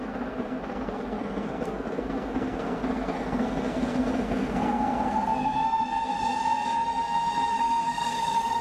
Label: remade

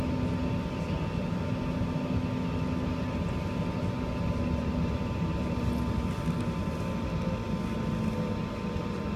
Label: recorded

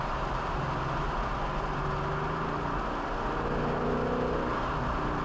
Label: recorded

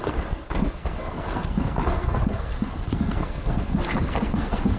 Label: remade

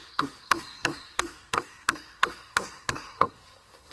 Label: remade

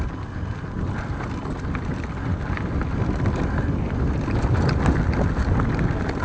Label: recorded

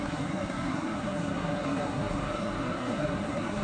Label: remade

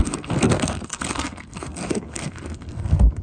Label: remade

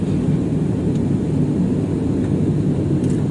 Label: recorded